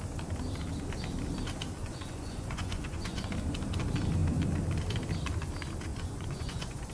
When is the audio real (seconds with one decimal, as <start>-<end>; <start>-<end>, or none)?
0.0-1.8; 3.3-5.9